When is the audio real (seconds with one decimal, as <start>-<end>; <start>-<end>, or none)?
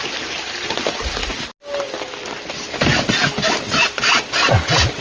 0.0-5.0